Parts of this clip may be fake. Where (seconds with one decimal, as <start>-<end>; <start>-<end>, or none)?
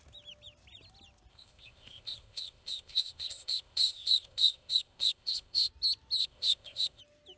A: 1.3-5.7; 6.2-7.0